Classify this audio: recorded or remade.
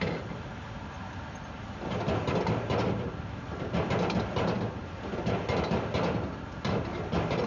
recorded